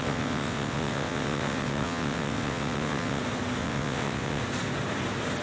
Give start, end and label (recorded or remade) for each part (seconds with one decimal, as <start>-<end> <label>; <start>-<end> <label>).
0.0-3.2 remade; 3.2-3.6 recorded; 3.6-4.4 remade; 4.4-5.4 recorded